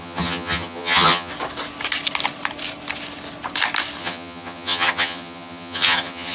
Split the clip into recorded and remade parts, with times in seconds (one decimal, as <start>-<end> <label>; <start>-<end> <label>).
0.0-1.3 remade; 1.3-4.0 recorded; 4.0-6.3 remade